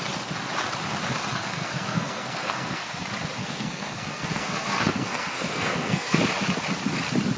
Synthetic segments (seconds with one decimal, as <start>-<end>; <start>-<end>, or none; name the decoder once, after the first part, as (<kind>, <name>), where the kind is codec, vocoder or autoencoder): 1.3-2.9 (codec, SNAC); 3.4-6.2